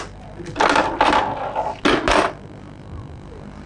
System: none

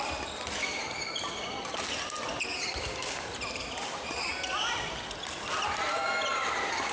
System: none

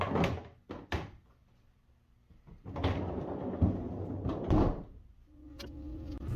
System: none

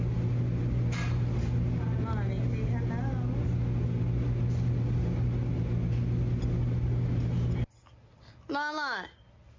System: none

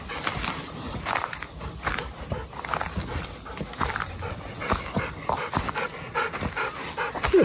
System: none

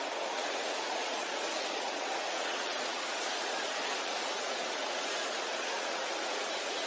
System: vocoder, Vocos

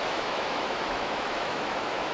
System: autoencoder, DAC-VAE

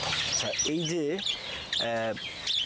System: none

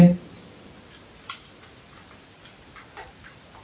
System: none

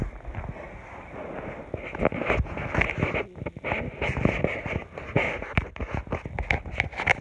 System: none